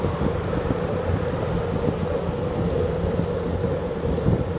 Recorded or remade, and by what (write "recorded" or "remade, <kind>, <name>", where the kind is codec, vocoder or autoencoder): recorded